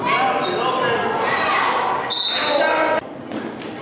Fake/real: real